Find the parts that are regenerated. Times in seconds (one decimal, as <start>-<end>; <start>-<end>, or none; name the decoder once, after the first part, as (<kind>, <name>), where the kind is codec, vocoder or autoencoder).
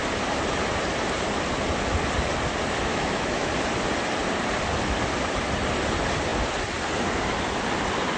2.9-3.5 (autoencoder, DAC-VAE)